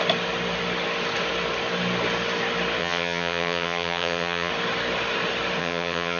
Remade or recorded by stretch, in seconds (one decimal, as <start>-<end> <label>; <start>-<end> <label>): 0.0-2.8 recorded; 2.8-4.5 remade; 4.5-5.6 recorded; 5.6-6.2 remade